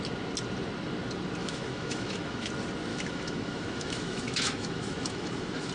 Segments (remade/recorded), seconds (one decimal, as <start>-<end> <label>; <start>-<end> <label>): 0.0-1.4 recorded; 1.4-2.5 remade; 2.5-2.9 recorded; 2.9-5.7 remade